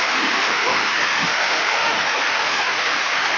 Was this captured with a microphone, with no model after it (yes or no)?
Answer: no